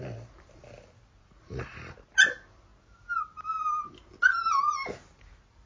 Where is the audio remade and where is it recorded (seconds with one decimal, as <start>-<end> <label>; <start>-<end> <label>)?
0.0-1.2 recorded; 1.2-1.9 remade; 1.9-5.7 recorded